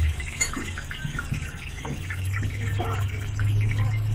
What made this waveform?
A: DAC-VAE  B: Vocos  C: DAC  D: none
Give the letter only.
C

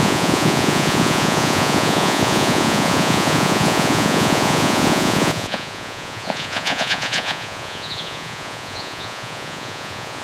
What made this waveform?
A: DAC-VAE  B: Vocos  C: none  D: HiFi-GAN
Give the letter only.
B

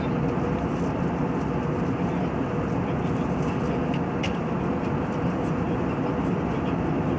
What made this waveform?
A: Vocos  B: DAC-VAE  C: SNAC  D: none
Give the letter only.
D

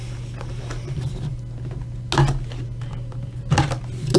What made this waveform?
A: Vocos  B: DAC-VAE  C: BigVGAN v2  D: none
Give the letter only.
D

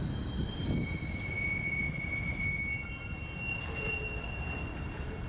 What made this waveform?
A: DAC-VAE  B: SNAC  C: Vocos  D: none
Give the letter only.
D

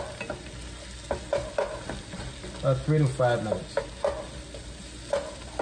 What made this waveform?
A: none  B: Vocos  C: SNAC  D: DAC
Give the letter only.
A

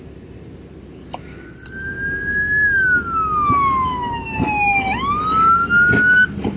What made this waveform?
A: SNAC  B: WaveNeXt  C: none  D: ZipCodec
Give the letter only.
C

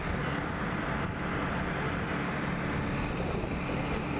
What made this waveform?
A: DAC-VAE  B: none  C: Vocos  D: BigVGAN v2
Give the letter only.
B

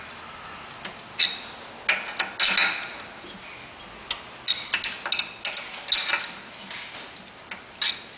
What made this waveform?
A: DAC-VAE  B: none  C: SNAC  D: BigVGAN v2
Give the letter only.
B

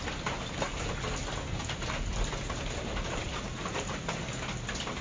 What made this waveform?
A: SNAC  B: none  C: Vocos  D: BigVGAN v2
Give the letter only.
B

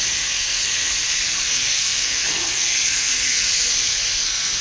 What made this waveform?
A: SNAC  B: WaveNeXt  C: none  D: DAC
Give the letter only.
A